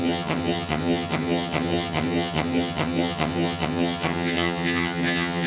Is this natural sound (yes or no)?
no